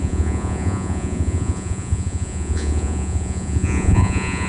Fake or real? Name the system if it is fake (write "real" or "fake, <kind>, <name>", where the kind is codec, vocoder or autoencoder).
fake, vocoder, Vocos